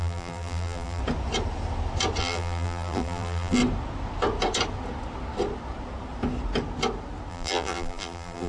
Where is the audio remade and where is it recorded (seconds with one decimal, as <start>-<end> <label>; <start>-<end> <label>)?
0.0-1.0 remade; 1.0-2.2 recorded; 2.2-3.6 remade; 3.6-7.3 recorded; 7.3-8.5 remade

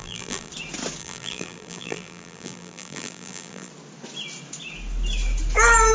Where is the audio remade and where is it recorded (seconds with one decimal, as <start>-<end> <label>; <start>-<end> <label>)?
0.0-0.5 remade; 0.5-1.0 recorded; 1.0-3.7 remade; 3.7-5.9 recorded

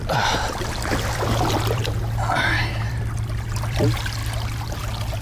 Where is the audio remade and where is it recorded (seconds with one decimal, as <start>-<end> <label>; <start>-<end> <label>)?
0.0-1.8 remade; 1.8-2.7 recorded; 2.7-4.2 remade; 4.2-5.2 recorded

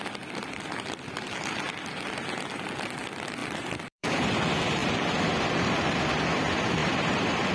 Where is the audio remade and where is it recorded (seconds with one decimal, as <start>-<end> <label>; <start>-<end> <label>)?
0.0-3.4 recorded; 3.4-4.1 remade; 4.1-6.8 recorded; 6.8-7.5 remade

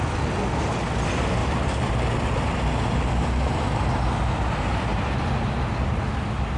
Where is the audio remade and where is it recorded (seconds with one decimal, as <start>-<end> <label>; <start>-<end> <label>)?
0.0-1.4 recorded; 1.4-3.8 remade; 3.8-4.9 recorded; 4.9-5.7 remade; 5.7-6.6 recorded

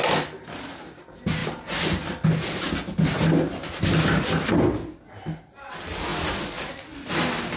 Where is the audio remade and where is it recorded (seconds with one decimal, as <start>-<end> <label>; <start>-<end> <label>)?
0.0-7.6 recorded

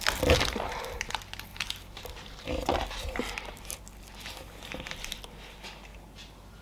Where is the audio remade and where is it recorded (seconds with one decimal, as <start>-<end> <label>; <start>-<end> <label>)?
0.0-1.5 recorded; 1.5-3.2 remade; 3.2-5.9 recorded; 5.9-6.6 remade